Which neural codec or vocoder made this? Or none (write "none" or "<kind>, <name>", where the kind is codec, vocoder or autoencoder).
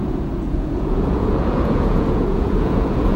vocoder, Vocos